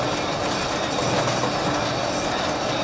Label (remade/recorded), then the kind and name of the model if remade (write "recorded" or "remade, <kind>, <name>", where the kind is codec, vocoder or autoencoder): recorded